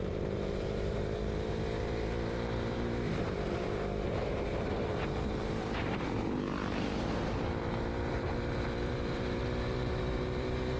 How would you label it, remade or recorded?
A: remade